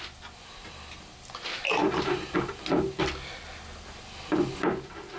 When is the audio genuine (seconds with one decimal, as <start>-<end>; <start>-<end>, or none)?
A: 0.0-5.2

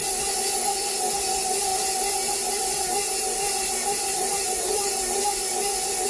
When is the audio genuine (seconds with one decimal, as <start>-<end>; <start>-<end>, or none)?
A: 0.0-1.7; 5.4-6.1

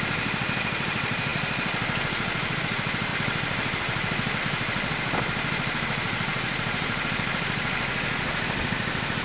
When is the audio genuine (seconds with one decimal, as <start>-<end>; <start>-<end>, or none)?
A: 0.0-3.1; 4.4-6.3; 7.1-9.2

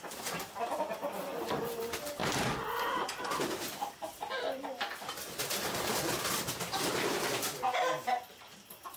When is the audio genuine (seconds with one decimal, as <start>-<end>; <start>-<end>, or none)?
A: 0.0-9.0

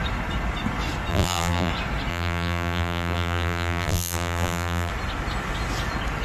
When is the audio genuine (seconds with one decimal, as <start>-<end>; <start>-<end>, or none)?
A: 0.0-1.1; 1.7-2.1; 4.9-6.2

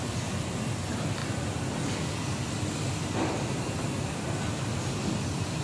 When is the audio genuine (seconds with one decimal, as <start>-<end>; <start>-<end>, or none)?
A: 0.0-5.6